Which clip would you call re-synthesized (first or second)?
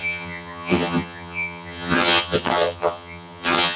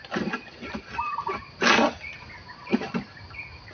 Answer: first